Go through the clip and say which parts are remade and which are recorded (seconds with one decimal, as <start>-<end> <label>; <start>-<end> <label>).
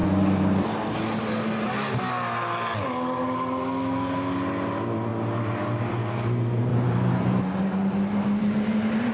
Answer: 0.0-9.1 recorded